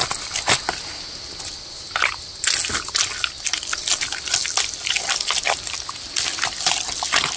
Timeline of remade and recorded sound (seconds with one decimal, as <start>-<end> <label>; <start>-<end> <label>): 0.0-7.4 recorded